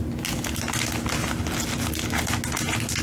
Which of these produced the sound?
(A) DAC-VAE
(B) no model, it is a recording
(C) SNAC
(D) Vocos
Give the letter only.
B